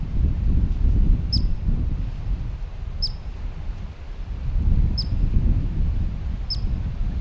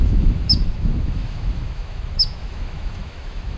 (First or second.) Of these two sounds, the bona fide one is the first